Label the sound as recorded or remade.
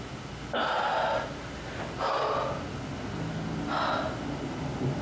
recorded